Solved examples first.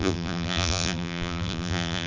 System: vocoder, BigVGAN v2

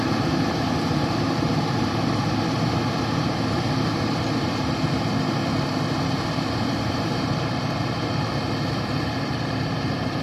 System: vocoder, BigVGAN v2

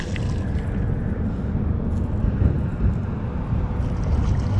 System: none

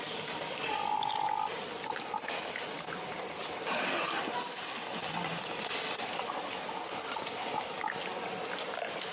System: none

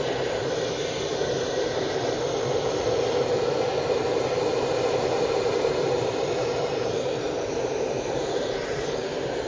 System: vocoder, BigVGAN v2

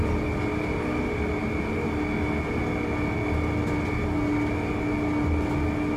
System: none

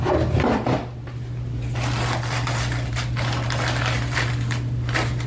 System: vocoder, BigVGAN v2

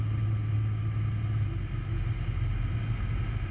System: none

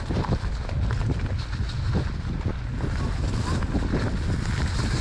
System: none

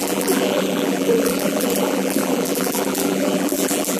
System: vocoder, BigVGAN v2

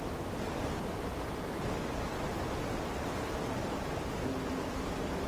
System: none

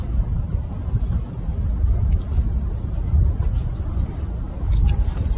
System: none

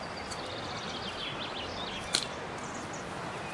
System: none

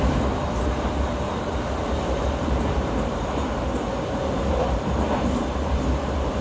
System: vocoder, BigVGAN v2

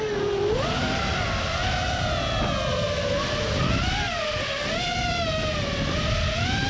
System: none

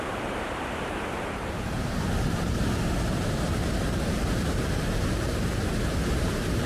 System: vocoder, BigVGAN v2